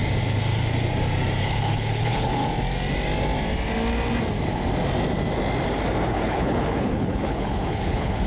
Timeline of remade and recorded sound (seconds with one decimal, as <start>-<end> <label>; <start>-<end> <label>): 0.0-1.4 recorded; 1.4-2.4 remade; 2.4-6.1 recorded; 6.1-8.3 remade